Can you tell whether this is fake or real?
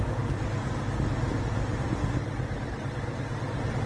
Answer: real